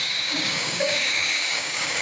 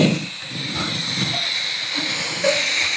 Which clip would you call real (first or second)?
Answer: second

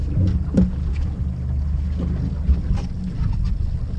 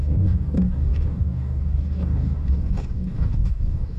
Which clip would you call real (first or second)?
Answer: first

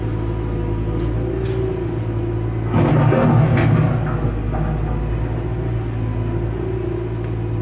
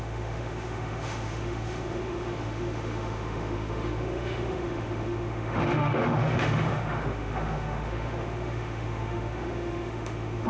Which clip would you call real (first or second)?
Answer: first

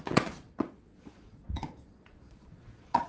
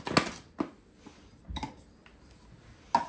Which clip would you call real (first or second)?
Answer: second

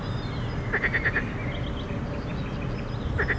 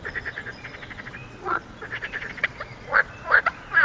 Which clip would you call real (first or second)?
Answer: first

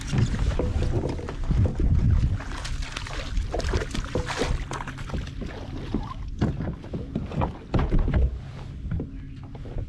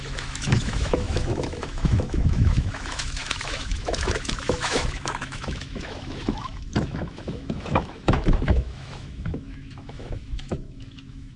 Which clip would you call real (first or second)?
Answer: first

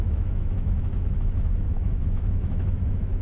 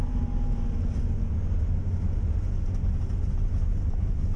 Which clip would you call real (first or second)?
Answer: second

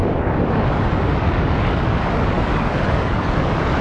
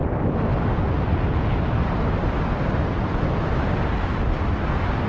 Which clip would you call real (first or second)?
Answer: second